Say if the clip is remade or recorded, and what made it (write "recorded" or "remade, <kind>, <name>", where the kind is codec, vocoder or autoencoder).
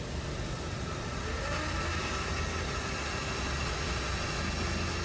recorded